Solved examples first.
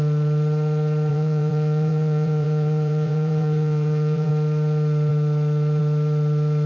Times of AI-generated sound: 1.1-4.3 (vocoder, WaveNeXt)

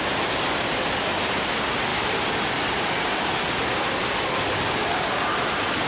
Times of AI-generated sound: none

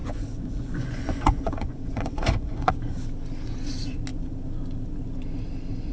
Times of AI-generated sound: 0.0-2.7 (vocoder, Vocos)

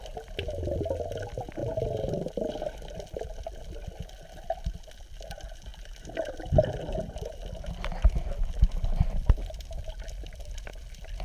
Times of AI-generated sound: none